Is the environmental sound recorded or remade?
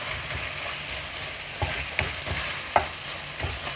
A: recorded